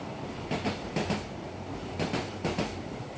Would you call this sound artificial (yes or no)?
no